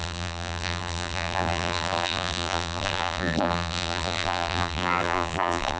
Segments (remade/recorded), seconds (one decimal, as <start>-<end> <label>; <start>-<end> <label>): 0.0-5.8 remade